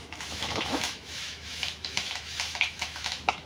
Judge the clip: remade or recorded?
remade